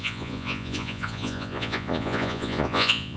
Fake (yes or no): yes